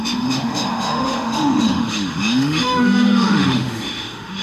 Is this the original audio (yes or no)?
no